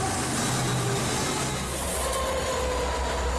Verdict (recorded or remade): recorded